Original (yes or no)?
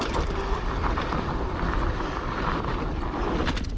yes